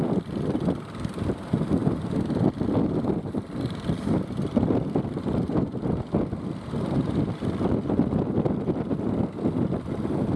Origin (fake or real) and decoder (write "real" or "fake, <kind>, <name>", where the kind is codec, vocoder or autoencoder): real